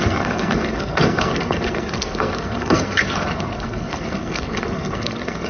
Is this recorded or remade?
remade